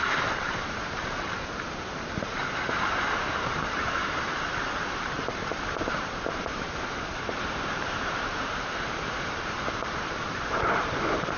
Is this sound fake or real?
fake